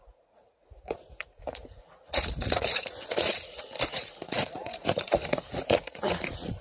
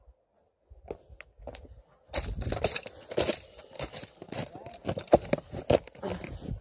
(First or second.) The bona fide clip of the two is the second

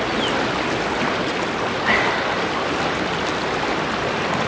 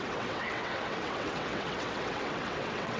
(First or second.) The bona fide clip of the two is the first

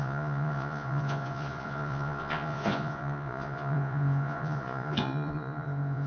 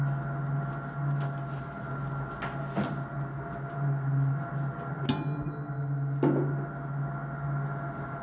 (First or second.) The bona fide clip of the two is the second